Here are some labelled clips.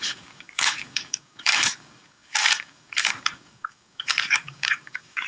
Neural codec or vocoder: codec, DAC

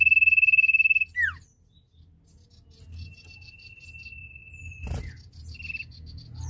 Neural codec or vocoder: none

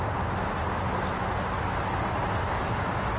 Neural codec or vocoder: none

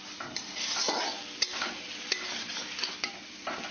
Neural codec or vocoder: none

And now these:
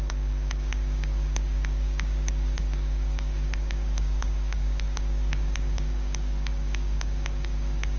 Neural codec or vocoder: codec, DAC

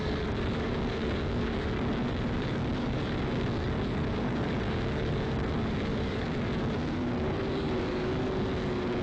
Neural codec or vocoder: codec, DAC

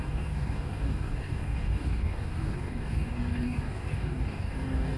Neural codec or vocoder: codec, DAC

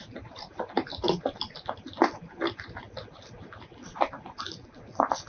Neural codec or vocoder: none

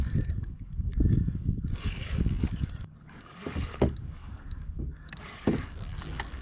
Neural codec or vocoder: codec, DAC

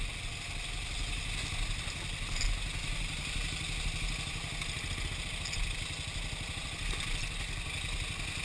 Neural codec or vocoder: none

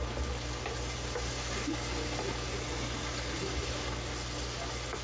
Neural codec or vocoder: none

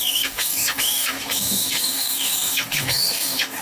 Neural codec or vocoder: codec, DAC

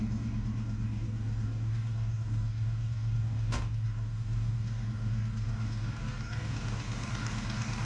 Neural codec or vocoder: codec, DAC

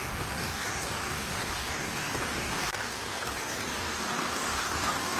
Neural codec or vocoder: codec, DAC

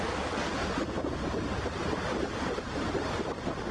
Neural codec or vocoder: none